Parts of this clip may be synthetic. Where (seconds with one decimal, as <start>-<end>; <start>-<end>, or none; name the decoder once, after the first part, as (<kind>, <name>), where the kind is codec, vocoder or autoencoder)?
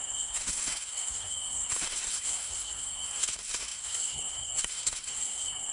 0.0-5.7 (codec, SNAC)